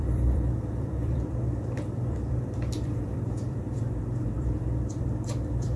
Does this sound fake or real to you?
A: fake